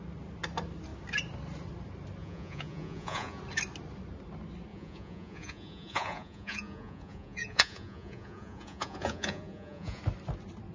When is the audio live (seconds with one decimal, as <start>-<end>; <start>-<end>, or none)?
0.0-2.2; 3.4-4.7; 10.0-10.7